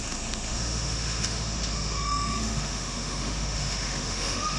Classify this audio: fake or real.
fake